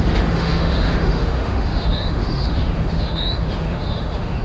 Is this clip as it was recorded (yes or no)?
no